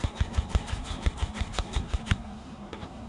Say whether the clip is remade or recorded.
remade